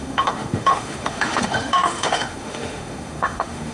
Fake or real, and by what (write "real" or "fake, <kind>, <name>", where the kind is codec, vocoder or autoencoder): fake, autoencoder, DAC-VAE